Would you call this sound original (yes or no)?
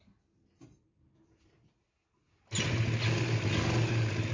yes